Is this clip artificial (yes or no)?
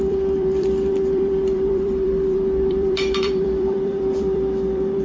yes